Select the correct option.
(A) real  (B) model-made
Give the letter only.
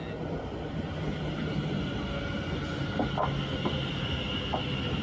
A